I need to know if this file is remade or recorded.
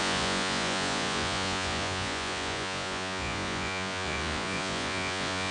remade